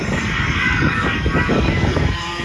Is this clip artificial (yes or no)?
yes